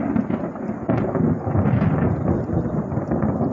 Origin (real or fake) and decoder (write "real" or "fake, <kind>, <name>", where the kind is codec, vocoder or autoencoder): real